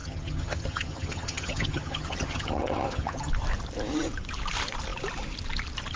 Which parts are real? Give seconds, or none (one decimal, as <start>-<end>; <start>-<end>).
3.3-6.0